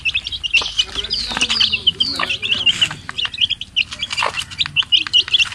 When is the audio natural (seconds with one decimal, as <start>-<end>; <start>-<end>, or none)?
0.0-5.5